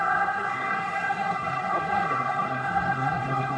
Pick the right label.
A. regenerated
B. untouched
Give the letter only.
A